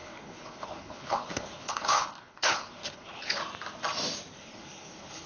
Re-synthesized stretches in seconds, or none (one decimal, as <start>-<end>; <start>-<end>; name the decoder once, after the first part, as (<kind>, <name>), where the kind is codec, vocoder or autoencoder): 0.0-3.4 (codec, HILCodec); 4.3-5.3